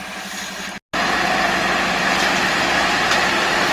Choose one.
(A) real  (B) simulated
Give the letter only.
A